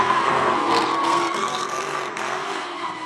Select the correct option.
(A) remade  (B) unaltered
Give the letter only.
A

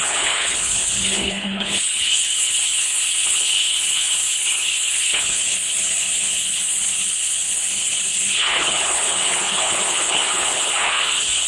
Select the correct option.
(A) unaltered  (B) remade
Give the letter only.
B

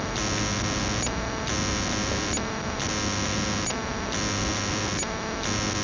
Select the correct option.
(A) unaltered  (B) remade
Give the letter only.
A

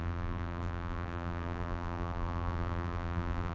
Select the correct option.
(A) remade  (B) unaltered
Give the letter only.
A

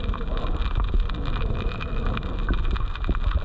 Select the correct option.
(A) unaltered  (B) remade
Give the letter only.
A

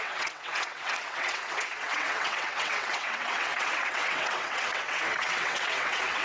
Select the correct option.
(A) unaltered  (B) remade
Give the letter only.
B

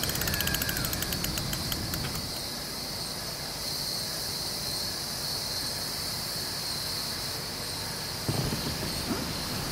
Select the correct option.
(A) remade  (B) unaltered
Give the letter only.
B